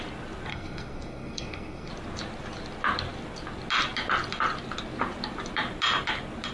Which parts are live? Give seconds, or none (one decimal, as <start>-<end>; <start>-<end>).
0.0-0.5; 1.9-6.5